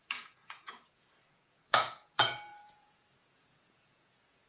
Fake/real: fake